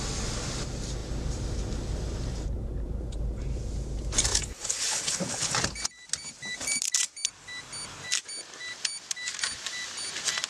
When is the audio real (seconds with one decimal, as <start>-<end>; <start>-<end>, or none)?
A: 0.0-4.3; 5.5-10.5